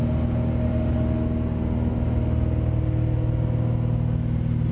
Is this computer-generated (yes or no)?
no